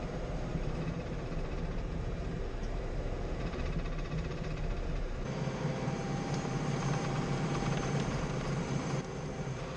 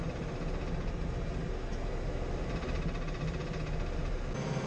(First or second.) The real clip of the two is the second